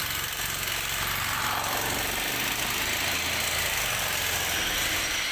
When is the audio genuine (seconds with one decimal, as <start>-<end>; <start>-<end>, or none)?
2.6-5.3